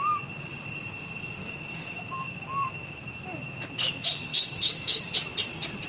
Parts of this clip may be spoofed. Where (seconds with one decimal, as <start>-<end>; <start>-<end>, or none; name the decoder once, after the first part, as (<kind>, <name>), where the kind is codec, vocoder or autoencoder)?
1.4-3.0 (autoencoder, DAC-VAE); 4.3-5.0